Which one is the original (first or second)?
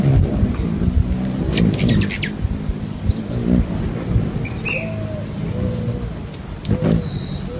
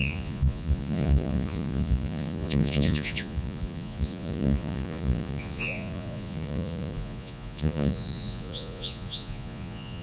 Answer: first